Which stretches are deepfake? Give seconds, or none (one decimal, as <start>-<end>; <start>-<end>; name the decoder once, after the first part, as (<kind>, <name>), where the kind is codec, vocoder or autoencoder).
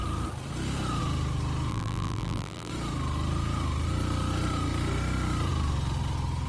1.7-2.7 (vocoder, BigVGAN v2)